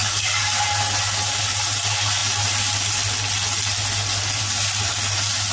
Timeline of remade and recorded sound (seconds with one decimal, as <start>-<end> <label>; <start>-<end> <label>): 0.0-0.5 remade; 0.5-5.5 recorded

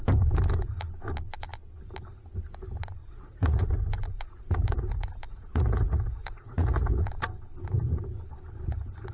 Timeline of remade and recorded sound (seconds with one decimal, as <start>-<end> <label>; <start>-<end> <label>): 0.0-3.0 recorded; 3.0-7.0 remade; 7.0-9.1 recorded